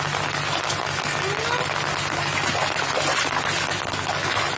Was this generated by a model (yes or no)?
no